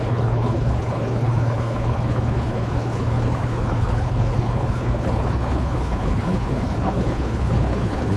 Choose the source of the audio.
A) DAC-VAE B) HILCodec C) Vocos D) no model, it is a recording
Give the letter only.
B